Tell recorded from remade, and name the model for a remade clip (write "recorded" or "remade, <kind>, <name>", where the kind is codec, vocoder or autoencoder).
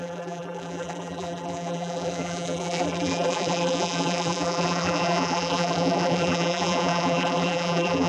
remade, vocoder, BigVGAN v2